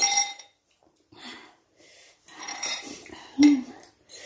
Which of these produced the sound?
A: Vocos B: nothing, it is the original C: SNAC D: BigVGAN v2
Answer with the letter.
D